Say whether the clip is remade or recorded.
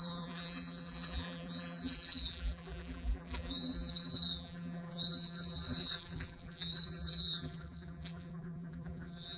remade